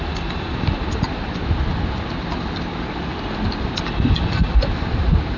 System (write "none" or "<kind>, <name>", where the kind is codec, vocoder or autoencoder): none